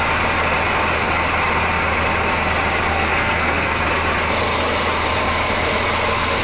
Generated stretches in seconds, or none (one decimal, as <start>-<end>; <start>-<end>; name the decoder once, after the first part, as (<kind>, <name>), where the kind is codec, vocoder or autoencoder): 2.9-3.8 (codec, SNAC)